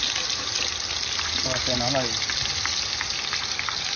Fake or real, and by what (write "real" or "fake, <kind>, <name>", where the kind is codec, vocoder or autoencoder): real